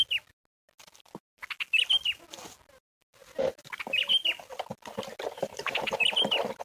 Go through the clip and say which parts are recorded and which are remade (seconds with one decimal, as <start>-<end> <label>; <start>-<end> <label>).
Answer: 0.0-6.6 recorded